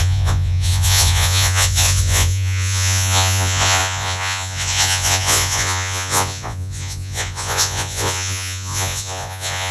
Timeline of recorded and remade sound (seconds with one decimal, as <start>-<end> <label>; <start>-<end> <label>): 0.0-9.7 remade